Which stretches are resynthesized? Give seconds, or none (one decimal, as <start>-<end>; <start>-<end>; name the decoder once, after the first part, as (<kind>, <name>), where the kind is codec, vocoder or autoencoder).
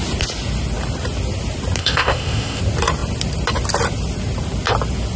1.8-2.6 (codec, ZipCodec)